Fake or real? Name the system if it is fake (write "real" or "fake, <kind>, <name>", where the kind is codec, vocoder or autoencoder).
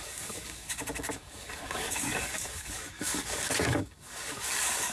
fake, codec, DAC